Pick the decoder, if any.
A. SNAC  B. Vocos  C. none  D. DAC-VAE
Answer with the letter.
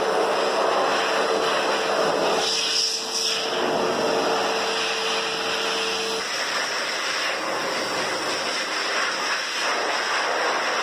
C